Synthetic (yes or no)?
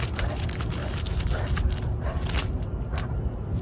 no